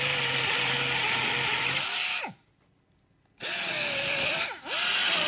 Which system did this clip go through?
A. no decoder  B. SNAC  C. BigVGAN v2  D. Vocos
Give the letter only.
A